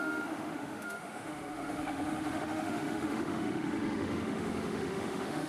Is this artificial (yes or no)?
yes